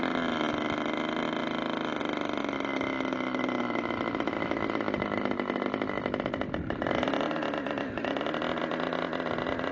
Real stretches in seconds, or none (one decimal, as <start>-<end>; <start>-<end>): 0.0-9.7